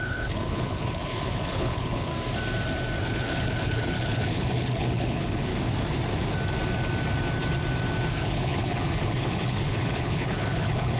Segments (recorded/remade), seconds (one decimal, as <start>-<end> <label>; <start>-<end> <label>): 0.0-2.1 remade; 2.1-3.0 recorded; 3.0-5.5 remade; 5.5-8.1 recorded; 8.1-11.0 remade